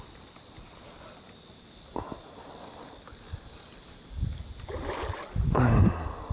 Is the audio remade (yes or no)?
no